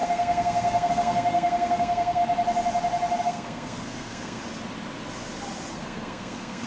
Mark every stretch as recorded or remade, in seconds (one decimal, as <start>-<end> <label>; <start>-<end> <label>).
0.0-2.2 remade; 2.2-3.2 recorded; 3.2-4.4 remade; 4.4-5.7 recorded; 5.7-6.7 remade